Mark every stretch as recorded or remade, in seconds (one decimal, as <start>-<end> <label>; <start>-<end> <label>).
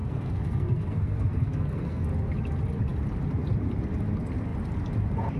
0.0-2.1 remade; 2.1-5.4 recorded